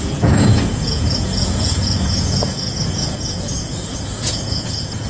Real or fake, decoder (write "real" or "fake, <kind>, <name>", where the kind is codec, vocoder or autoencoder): fake, vocoder, Vocos